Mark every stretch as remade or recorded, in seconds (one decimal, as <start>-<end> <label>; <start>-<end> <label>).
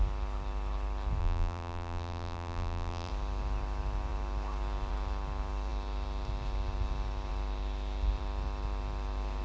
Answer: 0.0-1.2 recorded; 1.2-3.1 remade; 3.1-9.4 recorded